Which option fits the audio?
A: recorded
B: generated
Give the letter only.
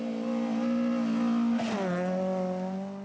A